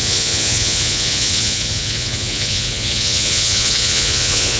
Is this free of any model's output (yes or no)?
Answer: no